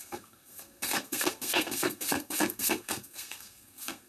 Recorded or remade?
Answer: remade